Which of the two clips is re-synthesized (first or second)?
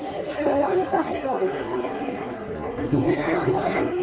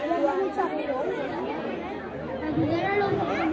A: first